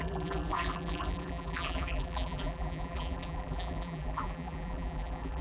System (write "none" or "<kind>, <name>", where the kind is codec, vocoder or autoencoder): vocoder, BigVGAN v2